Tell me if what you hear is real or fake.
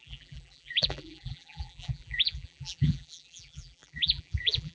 fake